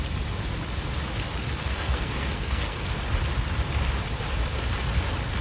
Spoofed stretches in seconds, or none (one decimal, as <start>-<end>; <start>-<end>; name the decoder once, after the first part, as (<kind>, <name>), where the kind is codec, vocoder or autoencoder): 1.6-2.9 (codec, SNAC)